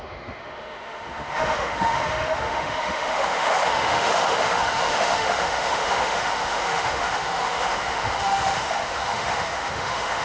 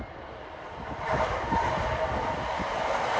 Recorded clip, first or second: second